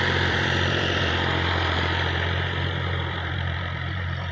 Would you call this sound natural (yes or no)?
no